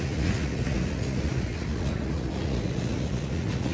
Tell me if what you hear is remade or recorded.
remade